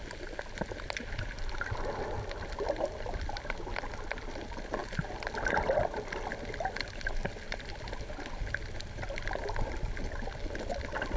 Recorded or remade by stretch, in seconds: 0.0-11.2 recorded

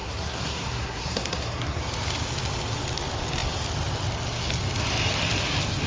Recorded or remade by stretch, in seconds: 0.0-1.8 remade; 1.8-5.9 recorded

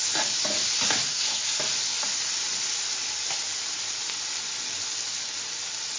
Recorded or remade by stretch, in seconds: 0.0-1.1 recorded; 1.1-1.6 remade; 1.6-6.0 recorded

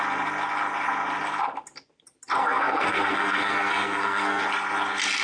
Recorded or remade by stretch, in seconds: 0.0-2.4 recorded; 2.4-4.4 remade; 4.4-5.2 recorded

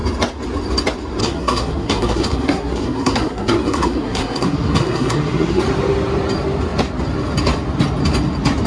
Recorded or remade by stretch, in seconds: 0.0-1.2 recorded; 1.2-5.6 remade; 5.6-8.7 recorded